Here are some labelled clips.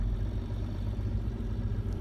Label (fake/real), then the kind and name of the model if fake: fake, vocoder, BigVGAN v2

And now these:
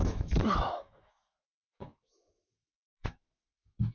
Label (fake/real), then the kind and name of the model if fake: fake, autoencoder, DAC-VAE